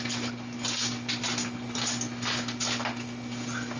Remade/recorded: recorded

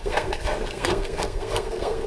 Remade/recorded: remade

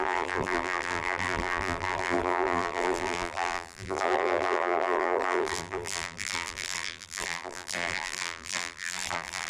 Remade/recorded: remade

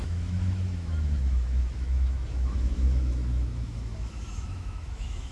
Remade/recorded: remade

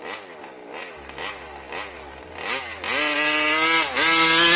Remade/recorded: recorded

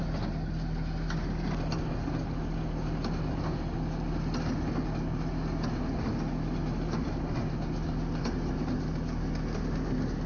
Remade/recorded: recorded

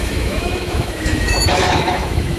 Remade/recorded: remade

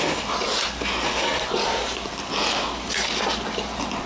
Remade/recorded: recorded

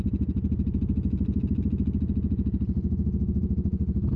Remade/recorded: recorded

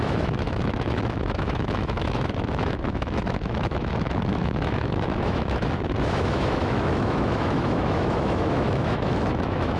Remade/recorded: remade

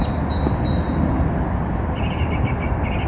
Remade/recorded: recorded